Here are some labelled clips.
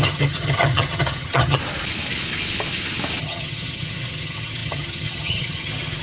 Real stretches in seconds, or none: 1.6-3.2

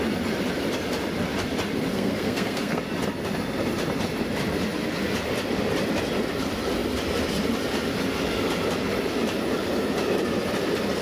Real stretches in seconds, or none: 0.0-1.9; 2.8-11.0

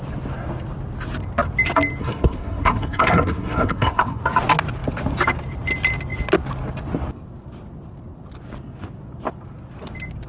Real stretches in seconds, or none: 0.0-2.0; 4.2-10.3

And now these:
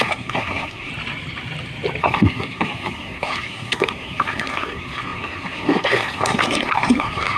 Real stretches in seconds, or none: 0.9-2.0